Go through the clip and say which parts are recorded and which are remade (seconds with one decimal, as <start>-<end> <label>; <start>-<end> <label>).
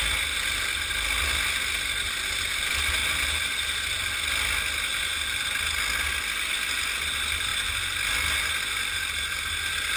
0.0-3.0 recorded; 3.0-3.6 remade; 3.6-10.0 recorded